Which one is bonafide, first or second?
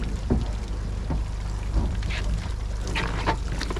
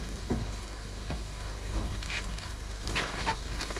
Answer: first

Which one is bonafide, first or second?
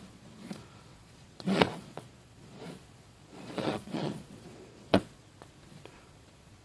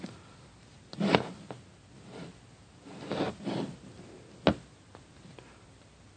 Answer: second